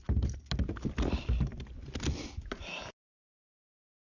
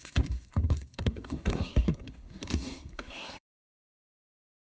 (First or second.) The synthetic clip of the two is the second